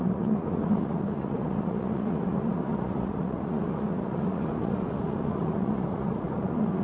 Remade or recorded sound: remade